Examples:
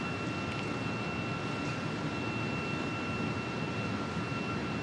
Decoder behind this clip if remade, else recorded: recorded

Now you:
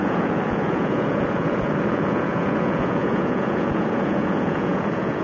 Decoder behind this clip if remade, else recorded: remade, vocoder, Vocos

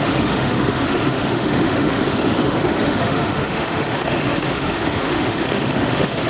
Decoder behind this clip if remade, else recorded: remade, autoencoder, DAC-VAE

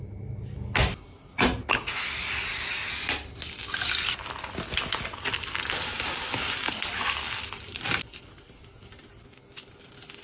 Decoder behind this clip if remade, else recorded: recorded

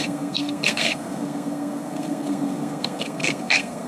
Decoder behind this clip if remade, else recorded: remade, codec, SNAC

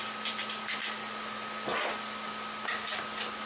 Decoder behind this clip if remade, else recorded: recorded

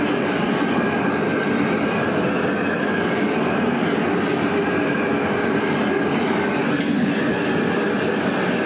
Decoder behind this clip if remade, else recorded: recorded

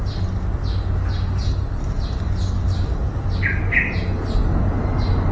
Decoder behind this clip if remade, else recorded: recorded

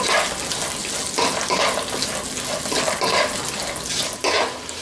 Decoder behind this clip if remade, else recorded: recorded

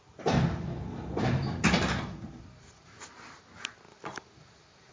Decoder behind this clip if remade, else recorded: recorded